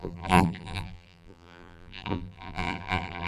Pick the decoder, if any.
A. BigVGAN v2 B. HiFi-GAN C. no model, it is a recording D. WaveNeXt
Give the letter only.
A